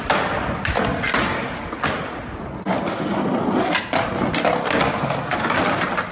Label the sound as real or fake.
real